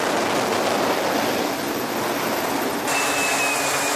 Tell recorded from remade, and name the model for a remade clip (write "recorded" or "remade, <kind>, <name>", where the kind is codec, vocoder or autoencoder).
recorded